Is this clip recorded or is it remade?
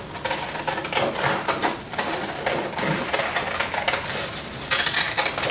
recorded